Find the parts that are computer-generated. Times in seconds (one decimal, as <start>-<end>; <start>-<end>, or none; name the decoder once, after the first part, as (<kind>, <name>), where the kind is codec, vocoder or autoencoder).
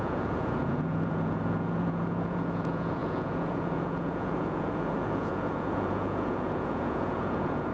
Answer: 0.0-7.7 (vocoder, Vocos)